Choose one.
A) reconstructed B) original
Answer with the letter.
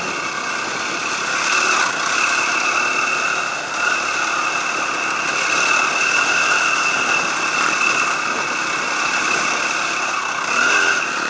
B